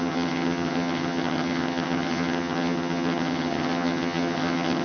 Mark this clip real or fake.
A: fake